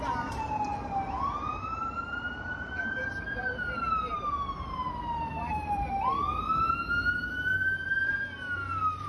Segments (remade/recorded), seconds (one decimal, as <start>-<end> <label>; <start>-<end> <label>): 0.0-0.7 remade; 0.7-1.6 recorded; 1.6-9.1 remade